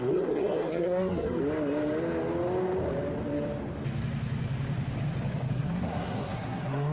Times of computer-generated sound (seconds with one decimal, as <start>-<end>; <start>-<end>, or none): 0.0-1.4; 5.5-6.9